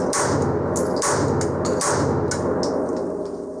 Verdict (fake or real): real